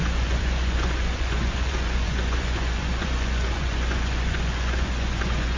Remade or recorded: remade